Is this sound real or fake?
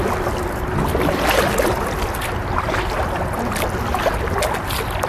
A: real